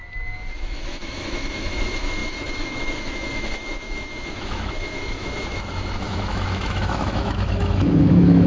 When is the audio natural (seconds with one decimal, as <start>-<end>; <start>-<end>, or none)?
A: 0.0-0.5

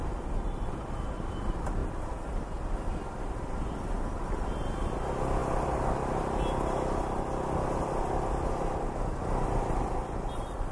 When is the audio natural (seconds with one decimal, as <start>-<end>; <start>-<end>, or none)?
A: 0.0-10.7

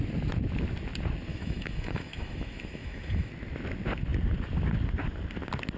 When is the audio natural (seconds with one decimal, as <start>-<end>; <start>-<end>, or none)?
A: 0.0-1.3; 3.3-5.8

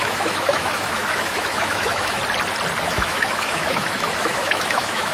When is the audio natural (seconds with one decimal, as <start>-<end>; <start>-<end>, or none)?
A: 2.2-2.8

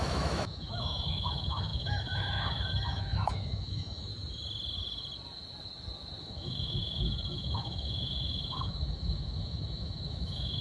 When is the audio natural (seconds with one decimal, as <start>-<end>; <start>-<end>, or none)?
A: 4.1-6.2

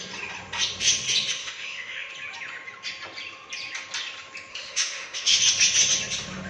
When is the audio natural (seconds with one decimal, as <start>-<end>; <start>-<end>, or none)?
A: 0.0-1.4; 2.1-4.5; 5.4-6.5